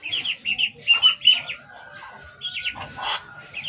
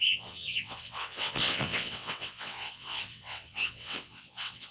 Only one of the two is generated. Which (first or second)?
second